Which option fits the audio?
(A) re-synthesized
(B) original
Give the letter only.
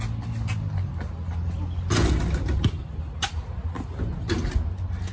B